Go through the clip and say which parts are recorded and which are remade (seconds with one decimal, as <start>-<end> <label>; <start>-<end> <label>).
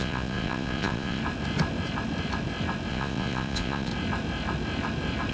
0.0-1.2 remade; 1.2-2.9 recorded; 2.9-3.9 remade; 3.9-5.3 recorded